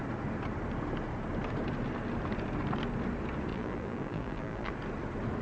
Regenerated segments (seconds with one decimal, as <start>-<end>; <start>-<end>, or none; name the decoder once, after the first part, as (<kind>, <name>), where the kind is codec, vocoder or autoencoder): 3.5-4.7 (vocoder, BigVGAN v2)